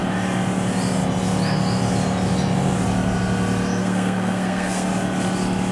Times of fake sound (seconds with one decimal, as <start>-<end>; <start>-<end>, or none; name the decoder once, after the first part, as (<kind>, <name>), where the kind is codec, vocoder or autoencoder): 3.8-4.9 (codec, SNAC)

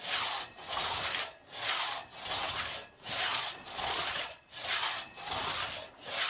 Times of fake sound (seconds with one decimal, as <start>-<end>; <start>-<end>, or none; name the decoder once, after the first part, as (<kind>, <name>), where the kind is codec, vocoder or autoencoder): 3.3-4.4 (vocoder, Vocos)

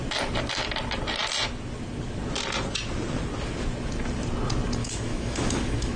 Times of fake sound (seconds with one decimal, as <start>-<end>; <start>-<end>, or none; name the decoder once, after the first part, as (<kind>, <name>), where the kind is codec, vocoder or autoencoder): 4.8-6.0 (autoencoder, DAC-VAE)

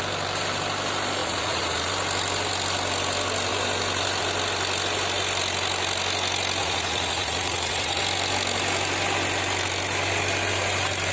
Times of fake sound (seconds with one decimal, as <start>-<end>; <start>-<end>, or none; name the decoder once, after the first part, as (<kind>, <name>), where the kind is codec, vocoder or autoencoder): 1.2-1.9 (vocoder, Vocos); 6.6-8.0

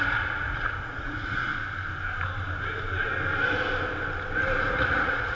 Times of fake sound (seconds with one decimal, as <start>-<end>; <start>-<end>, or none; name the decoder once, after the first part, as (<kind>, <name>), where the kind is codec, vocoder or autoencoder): 0.0-1.5 (vocoder, Vocos); 4.7-5.3

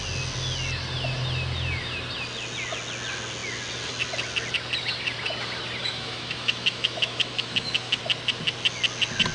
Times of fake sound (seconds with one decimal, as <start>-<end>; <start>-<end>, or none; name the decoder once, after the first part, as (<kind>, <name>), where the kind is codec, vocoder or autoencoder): 5.8-8.0 (autoencoder, DAC-VAE)

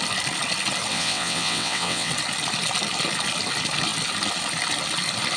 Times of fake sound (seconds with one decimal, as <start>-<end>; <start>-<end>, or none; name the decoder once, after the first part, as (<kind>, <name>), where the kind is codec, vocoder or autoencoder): 0.9-2.1 (vocoder, WaveNeXt)

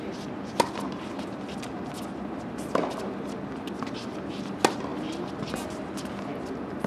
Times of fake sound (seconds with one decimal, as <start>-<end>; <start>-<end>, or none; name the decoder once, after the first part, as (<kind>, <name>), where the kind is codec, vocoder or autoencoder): none